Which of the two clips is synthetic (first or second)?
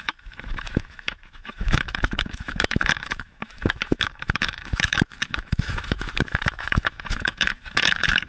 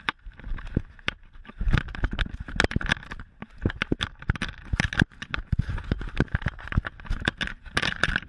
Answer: first